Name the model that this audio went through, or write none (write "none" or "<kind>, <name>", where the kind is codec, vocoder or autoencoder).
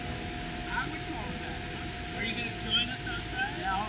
none